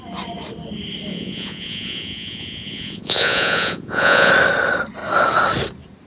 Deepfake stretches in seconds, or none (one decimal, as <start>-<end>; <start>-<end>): 1.1-4.3

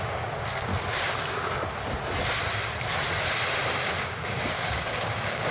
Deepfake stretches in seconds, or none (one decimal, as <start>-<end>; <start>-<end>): 0.0-0.7; 4.0-5.5

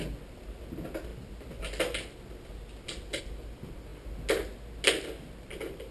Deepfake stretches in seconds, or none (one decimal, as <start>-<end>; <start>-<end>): none

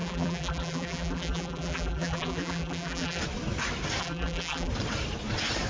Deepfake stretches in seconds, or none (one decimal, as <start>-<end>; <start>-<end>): 0.0-3.2; 4.0-4.7

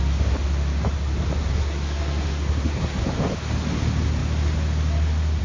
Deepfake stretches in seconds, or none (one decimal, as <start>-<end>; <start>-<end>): 1.5-3.0